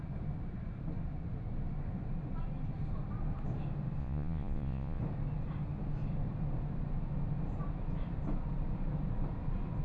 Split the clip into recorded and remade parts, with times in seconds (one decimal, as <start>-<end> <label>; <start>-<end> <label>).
0.0-4.0 recorded; 4.0-5.0 remade; 5.0-9.8 recorded